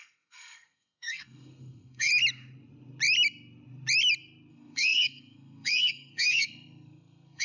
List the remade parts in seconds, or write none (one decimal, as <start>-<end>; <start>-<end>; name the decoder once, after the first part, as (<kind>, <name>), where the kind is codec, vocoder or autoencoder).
0.0-2.1 (codec, SNAC); 4.5-7.4